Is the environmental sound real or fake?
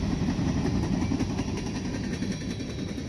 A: real